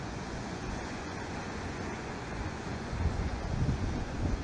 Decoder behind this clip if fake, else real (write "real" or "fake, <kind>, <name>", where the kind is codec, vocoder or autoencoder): fake, vocoder, Vocos